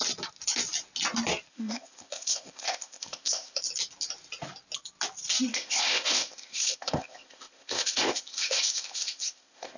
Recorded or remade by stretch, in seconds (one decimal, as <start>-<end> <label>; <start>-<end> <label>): 0.0-1.5 recorded; 1.5-3.6 remade; 3.6-5.5 recorded; 5.5-9.8 remade